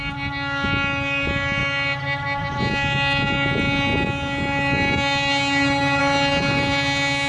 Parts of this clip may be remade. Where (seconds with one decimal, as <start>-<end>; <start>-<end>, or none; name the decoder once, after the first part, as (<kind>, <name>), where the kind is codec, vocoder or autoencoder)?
none

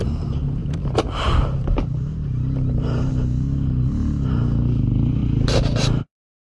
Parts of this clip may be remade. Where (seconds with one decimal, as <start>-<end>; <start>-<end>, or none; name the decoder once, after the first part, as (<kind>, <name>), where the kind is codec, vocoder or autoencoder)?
0.6-3.1 (vocoder, BigVGAN v2)

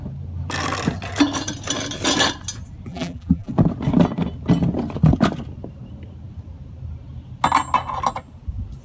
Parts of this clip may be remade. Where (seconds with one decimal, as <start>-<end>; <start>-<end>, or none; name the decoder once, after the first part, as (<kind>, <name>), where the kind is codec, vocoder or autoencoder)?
2.9-3.5 (vocoder, BigVGAN v2)

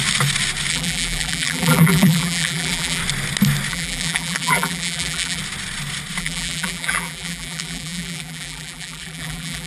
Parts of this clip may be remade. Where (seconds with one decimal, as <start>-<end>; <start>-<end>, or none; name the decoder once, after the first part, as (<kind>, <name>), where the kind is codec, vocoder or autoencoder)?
0.7-3.0 (vocoder, BigVGAN v2); 3.7-5.4; 6.2-9.7

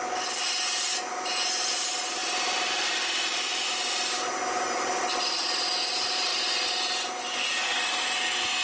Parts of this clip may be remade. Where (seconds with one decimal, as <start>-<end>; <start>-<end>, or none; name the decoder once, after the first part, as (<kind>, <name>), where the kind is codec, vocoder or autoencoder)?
2.2-5.5 (vocoder, BigVGAN v2)

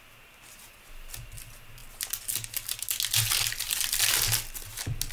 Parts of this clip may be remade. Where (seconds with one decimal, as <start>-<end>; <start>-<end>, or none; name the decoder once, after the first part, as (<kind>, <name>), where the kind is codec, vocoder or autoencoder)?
none